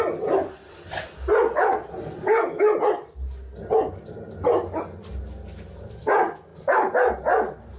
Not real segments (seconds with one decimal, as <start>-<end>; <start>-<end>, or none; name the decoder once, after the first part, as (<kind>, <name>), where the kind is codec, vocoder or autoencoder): none